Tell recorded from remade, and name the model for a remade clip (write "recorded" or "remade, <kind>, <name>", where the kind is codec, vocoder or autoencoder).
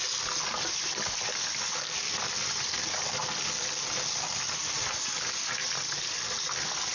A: recorded